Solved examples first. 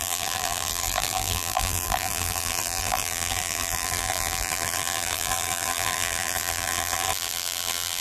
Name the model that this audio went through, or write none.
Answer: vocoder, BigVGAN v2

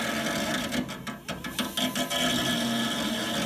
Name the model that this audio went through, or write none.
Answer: none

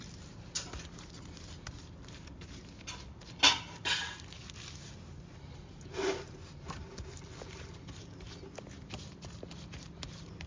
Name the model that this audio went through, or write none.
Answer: none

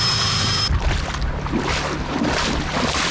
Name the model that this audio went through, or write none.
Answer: vocoder, BigVGAN v2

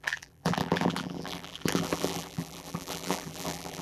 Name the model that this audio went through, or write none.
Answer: vocoder, BigVGAN v2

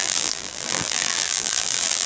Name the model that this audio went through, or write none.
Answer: vocoder, BigVGAN v2